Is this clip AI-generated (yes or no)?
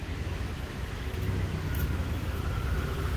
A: yes